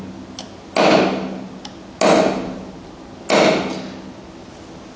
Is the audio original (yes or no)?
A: yes